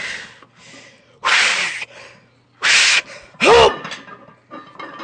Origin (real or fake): real